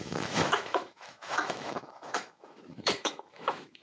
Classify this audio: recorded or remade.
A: remade